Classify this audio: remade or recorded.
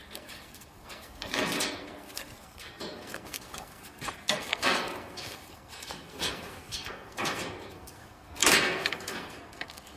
remade